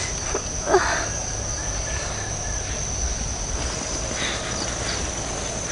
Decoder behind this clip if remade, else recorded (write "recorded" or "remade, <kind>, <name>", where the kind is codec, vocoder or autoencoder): recorded